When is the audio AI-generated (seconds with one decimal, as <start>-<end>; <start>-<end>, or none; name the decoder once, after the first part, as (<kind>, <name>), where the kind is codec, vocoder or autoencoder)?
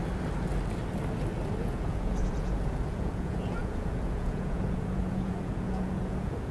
1.6-6.5 (vocoder, Vocos)